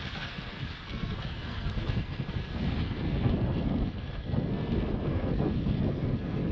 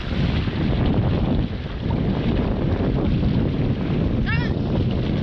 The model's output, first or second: first